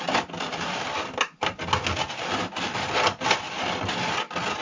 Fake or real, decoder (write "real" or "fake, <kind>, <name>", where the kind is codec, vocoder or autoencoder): real